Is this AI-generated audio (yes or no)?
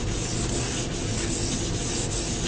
no